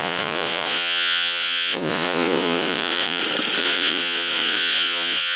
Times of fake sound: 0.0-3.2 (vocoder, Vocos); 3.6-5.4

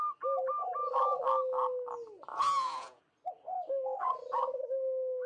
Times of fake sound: 2.3-3.0 (vocoder, Vocos)

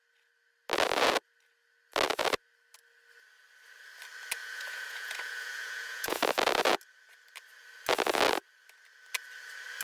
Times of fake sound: 4.4-6.2 (vocoder, Vocos)